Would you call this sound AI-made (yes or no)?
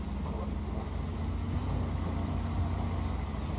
no